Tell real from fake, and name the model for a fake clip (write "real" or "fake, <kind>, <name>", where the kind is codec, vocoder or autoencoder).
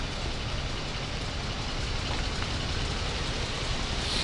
real